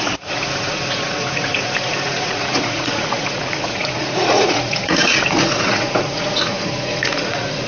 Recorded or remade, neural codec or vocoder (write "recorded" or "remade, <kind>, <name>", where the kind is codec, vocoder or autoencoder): remade, vocoder, Vocos